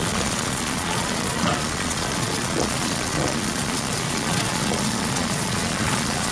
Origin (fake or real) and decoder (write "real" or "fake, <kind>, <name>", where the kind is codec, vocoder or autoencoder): fake, vocoder, Vocos